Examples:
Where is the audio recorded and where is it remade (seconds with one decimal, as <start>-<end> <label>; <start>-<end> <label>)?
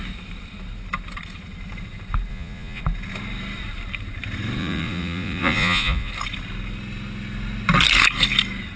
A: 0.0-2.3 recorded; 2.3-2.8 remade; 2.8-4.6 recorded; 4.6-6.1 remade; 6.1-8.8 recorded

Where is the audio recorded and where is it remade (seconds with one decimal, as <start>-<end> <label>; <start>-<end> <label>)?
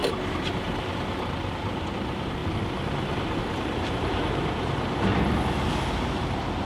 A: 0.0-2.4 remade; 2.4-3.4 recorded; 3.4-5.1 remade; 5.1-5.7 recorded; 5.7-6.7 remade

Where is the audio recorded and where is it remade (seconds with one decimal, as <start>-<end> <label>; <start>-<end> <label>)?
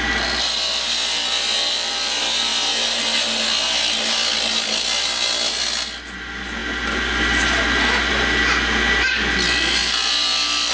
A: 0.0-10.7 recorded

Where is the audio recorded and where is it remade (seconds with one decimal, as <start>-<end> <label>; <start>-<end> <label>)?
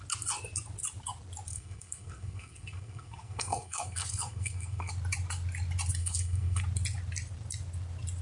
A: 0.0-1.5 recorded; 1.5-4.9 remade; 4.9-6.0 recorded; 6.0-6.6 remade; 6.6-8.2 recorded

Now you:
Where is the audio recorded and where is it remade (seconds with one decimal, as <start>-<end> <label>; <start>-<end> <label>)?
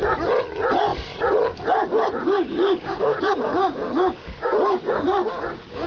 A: 0.0-2.2 recorded; 2.2-5.9 remade